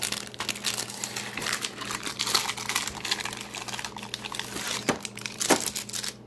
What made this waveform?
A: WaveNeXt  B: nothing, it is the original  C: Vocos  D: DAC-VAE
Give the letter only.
B